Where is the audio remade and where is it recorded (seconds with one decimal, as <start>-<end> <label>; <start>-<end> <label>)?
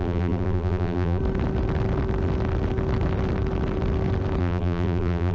0.0-1.2 remade; 1.2-4.4 recorded; 4.4-5.3 remade